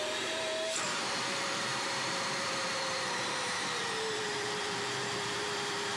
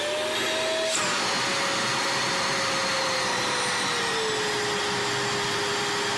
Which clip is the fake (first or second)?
first